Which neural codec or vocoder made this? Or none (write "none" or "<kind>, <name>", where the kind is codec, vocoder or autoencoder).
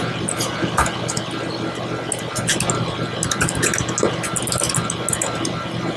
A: none